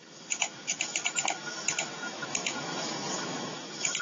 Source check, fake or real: fake